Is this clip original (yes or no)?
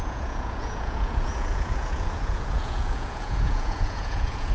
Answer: no